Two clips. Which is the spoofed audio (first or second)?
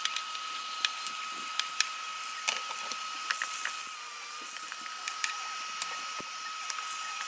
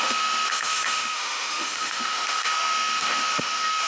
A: second